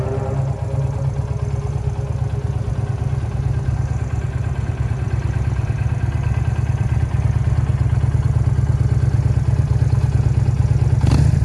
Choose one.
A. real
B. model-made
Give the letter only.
A